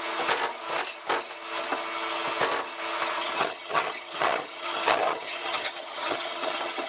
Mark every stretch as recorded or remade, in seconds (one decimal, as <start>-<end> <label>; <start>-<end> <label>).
0.0-3.2 recorded; 3.2-6.9 remade